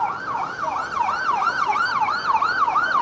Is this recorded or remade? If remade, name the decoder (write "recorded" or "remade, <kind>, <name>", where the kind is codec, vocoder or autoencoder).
recorded